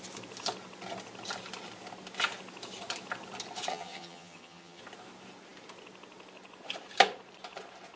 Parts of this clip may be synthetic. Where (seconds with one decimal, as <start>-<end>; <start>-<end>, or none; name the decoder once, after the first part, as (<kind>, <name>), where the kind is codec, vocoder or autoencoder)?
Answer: 3.7-4.8 (vocoder, HiFi-GAN)